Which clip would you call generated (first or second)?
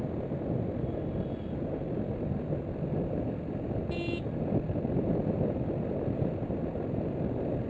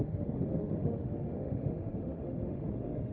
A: second